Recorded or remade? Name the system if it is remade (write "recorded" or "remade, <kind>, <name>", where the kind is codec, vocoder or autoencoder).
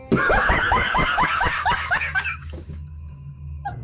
remade, codec, DAC